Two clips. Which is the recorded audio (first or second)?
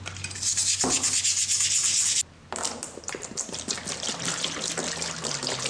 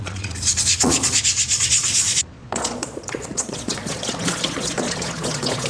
first